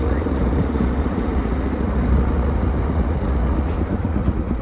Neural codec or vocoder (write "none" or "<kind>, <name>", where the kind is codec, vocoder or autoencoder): vocoder, Vocos